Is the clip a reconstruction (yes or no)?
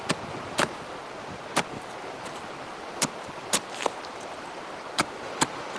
no